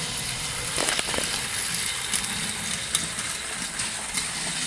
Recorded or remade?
recorded